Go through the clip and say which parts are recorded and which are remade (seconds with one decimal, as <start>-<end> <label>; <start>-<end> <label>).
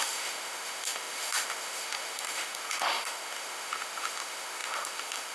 0.0-5.3 remade